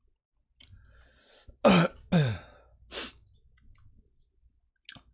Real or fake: real